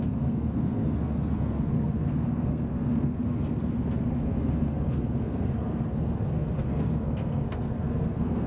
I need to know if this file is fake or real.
fake